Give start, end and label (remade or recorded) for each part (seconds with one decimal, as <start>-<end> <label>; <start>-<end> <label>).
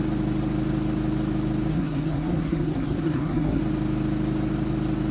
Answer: 0.0-1.7 recorded; 1.7-3.6 remade; 3.6-5.1 recorded